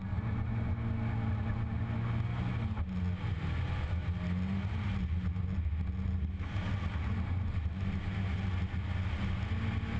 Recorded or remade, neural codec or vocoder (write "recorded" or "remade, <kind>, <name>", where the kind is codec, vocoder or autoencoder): recorded